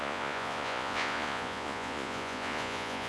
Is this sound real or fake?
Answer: fake